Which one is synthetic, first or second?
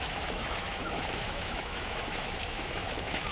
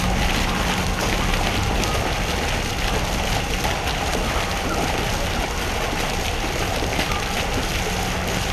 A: first